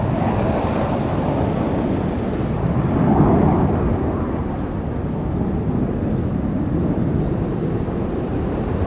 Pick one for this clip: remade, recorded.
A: remade